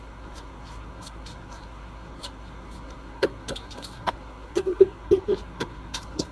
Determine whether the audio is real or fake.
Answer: fake